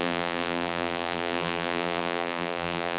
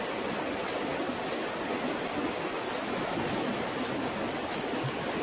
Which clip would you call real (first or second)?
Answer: second